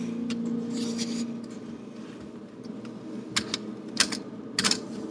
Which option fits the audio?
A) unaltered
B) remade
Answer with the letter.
A